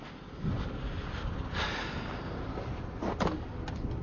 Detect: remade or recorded recorded